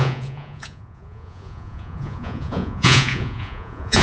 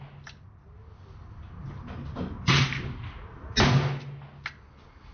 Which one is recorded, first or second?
second